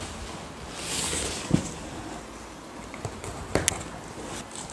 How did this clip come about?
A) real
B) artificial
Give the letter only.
A